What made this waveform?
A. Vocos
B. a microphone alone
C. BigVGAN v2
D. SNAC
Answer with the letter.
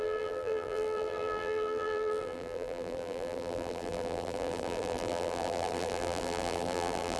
C